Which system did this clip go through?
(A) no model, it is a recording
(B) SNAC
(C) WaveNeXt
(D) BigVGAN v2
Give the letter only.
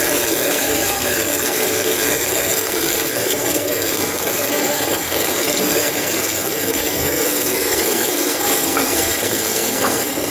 B